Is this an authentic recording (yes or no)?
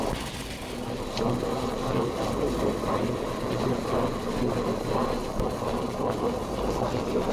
yes